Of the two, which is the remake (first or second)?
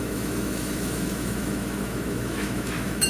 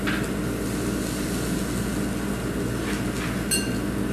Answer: first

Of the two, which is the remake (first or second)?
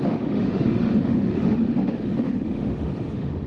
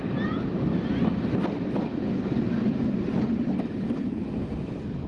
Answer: first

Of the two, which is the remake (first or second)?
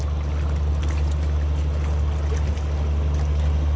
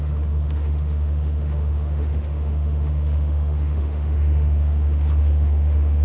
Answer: second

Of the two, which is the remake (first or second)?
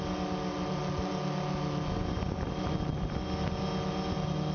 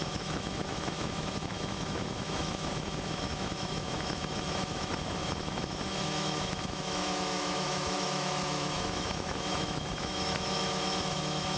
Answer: second